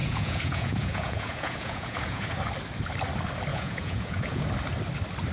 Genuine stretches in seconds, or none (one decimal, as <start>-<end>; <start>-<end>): 2.4-3.5; 4.4-5.3